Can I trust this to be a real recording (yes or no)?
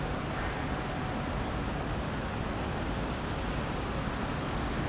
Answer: yes